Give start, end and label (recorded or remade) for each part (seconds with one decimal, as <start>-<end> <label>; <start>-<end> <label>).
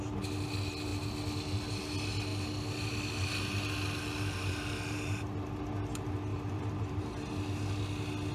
0.0-6.3 recorded; 6.3-7.0 remade; 7.0-8.3 recorded